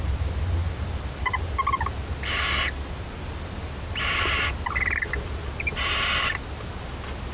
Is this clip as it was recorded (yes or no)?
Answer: yes